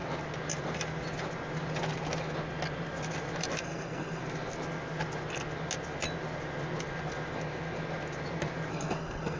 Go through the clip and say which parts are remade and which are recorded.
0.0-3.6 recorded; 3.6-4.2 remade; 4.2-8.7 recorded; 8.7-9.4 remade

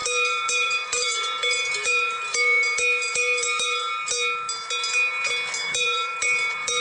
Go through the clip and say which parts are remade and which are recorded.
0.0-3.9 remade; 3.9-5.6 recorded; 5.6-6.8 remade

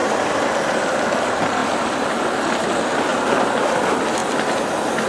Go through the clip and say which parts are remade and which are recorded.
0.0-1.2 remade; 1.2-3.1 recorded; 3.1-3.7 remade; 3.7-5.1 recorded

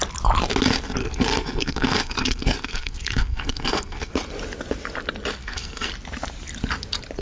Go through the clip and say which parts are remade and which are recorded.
0.0-1.0 recorded; 1.0-4.1 remade; 4.1-5.4 recorded; 5.4-5.9 remade; 5.9-7.2 recorded

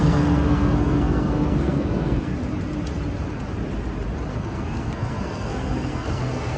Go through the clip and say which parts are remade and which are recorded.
0.0-2.3 remade; 2.3-4.3 recorded; 4.3-6.6 remade

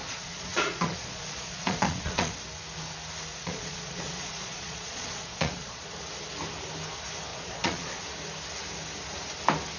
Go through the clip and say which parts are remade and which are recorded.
0.0-2.3 remade; 2.3-3.3 recorded; 3.3-5.9 remade; 5.9-7.3 recorded; 7.3-8.0 remade; 8.0-9.8 recorded

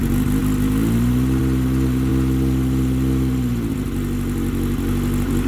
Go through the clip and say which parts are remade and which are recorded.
0.0-5.5 recorded